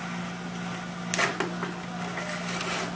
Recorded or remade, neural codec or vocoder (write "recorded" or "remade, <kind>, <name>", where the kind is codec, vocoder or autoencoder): recorded